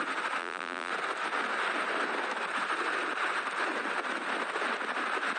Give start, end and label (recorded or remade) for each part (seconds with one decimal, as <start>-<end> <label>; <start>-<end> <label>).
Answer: 0.0-0.4 recorded; 0.4-0.9 remade; 0.9-5.4 recorded